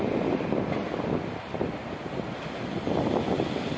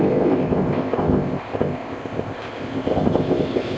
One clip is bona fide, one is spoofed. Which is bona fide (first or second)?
first